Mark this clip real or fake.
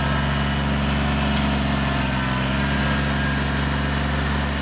real